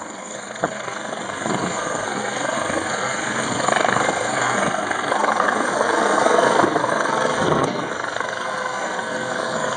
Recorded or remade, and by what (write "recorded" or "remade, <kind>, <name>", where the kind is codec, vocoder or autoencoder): remade, codec, SNAC